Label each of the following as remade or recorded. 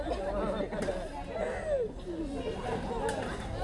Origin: recorded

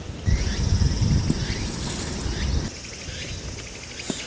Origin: remade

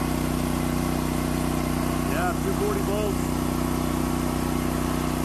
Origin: recorded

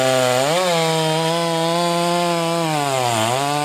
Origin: recorded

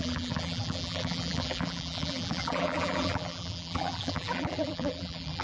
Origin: remade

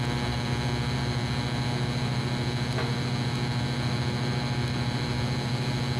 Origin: recorded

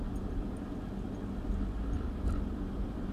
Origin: recorded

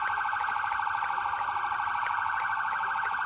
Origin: recorded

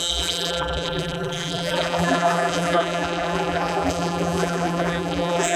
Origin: remade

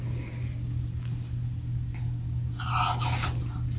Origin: recorded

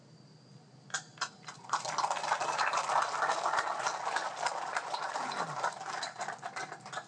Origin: recorded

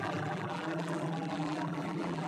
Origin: remade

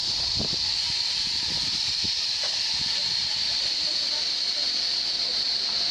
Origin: remade